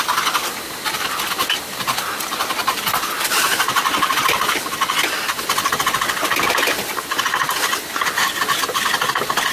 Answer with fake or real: real